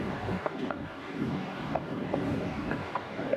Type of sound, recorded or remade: remade